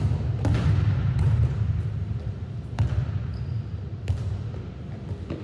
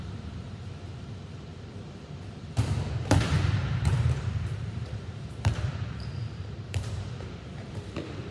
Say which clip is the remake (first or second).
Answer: second